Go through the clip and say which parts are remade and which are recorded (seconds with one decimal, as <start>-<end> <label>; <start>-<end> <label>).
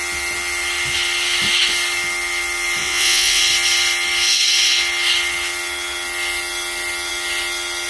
0.0-2.8 recorded; 2.8-3.4 remade; 3.4-7.9 recorded